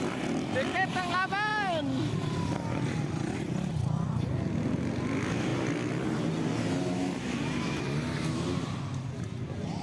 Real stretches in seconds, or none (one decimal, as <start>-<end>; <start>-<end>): 0.0-9.8